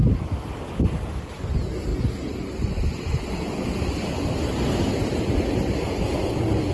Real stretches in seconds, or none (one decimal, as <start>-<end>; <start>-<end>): 0.0-6.7